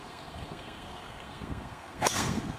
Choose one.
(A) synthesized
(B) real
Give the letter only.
A